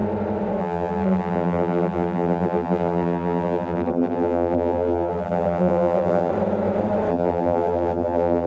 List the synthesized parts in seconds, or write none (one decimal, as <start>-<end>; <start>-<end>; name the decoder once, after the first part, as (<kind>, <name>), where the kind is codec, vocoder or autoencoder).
0.6-6.3 (vocoder, BigVGAN v2); 7.1-8.5